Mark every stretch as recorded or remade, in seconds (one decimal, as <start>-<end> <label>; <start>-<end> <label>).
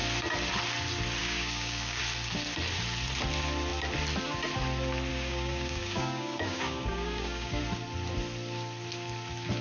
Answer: 0.0-1.2 recorded; 1.2-2.0 remade; 2.0-5.1 recorded; 5.1-7.6 remade; 7.6-9.6 recorded